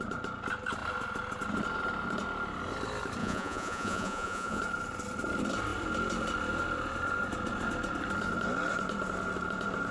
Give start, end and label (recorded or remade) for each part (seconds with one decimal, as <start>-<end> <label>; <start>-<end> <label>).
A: 0.0-3.2 recorded; 3.2-4.6 remade; 4.6-9.9 recorded

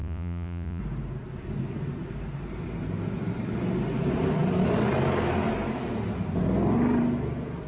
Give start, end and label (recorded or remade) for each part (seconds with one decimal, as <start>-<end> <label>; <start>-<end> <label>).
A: 0.0-0.8 remade; 0.8-7.7 recorded

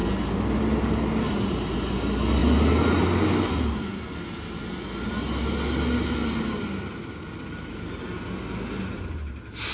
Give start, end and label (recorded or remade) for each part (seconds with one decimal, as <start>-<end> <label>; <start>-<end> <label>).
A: 0.0-9.7 recorded

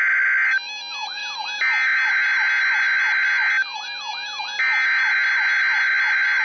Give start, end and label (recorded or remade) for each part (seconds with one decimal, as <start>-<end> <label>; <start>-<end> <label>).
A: 0.0-6.4 recorded

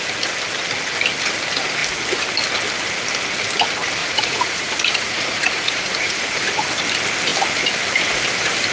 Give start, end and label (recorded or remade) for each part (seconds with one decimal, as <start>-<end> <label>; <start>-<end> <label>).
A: 0.0-4.0 recorded; 4.0-6.2 remade; 6.2-8.7 recorded

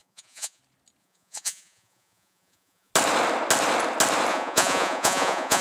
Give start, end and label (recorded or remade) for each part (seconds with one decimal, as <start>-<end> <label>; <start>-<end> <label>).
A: 0.0-0.6 remade; 0.6-1.0 recorded; 1.0-2.9 remade; 2.9-4.3 recorded; 4.3-5.6 remade